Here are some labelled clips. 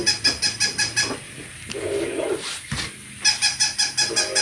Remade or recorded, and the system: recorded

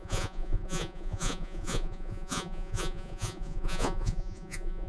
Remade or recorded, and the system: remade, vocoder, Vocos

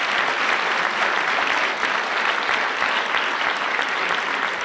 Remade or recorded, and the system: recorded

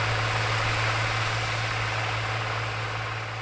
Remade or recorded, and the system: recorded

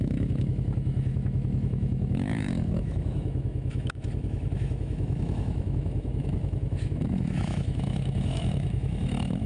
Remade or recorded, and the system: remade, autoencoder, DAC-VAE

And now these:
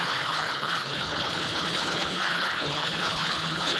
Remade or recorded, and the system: remade, codec, HILCodec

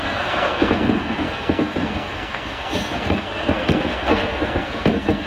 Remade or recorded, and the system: remade, codec, SNAC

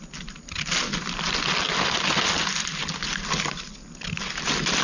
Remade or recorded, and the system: recorded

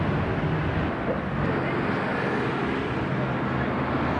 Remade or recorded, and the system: recorded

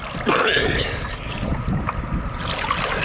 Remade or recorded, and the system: recorded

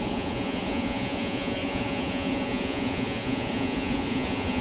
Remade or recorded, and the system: remade, vocoder, Vocos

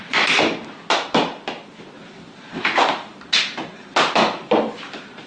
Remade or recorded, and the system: recorded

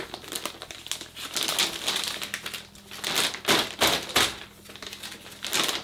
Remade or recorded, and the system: recorded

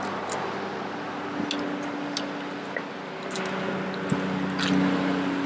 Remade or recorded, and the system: recorded